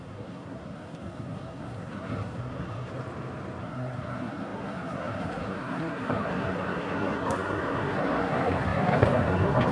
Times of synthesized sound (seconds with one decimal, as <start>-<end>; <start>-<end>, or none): 0.0-2.9; 3.6-9.7